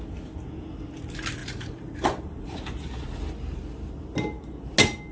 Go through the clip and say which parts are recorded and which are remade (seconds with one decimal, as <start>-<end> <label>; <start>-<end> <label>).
0.0-1.4 recorded; 1.4-3.9 remade; 3.9-5.1 recorded

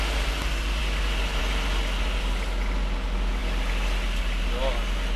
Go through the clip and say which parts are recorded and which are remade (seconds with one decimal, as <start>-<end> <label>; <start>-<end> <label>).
0.0-5.2 recorded

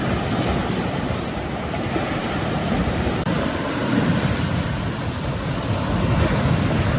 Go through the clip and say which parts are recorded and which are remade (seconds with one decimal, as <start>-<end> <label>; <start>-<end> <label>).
0.0-0.6 recorded; 0.6-4.8 remade; 4.8-7.0 recorded